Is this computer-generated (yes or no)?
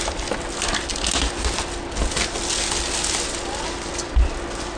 no